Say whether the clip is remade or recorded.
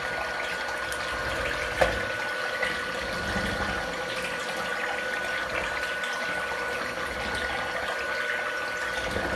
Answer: recorded